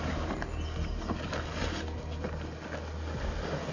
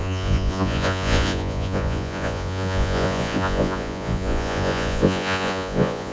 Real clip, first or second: first